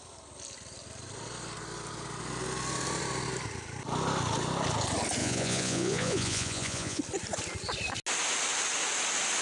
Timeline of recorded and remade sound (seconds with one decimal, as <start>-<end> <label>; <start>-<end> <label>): 0.0-5.2 recorded; 5.2-7.0 remade; 7.0-9.4 recorded